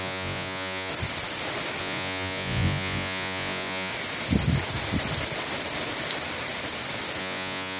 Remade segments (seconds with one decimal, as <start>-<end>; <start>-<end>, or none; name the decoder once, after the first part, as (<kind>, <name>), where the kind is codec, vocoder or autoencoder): 0.0-0.9 (vocoder, Vocos); 1.8-3.9; 7.2-7.8